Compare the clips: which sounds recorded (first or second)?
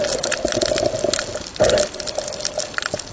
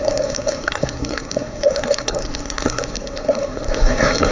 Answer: first